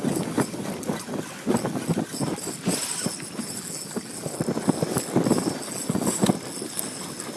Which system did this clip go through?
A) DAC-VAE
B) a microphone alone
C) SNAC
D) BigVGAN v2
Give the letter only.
B